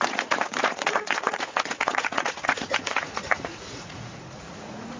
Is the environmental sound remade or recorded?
remade